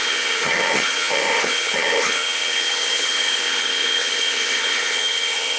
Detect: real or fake fake